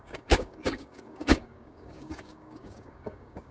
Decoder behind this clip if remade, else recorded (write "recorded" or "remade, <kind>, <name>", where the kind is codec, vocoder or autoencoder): remade, codec, DAC